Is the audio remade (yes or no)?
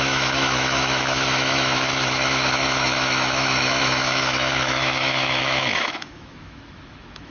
yes